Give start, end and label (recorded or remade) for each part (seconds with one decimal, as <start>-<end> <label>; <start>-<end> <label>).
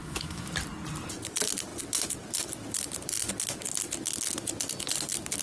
0.0-0.5 remade; 0.5-5.4 recorded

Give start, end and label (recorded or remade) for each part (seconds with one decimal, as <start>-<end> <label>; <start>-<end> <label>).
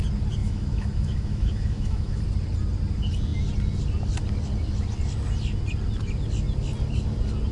0.0-0.4 recorded; 0.4-2.2 remade; 2.2-7.5 recorded